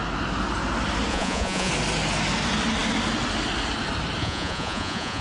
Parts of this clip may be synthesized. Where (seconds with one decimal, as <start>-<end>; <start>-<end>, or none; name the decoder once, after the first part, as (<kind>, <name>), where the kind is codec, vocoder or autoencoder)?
1.1-1.7 (vocoder, Vocos); 4.2-5.2